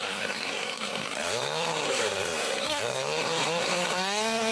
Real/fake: fake